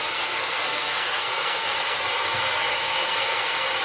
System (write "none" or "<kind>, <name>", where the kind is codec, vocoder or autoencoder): codec, SNAC